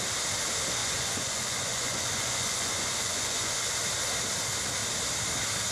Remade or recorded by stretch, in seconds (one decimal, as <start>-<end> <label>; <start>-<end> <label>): 0.0-0.8 recorded; 0.8-3.5 remade; 3.5-5.7 recorded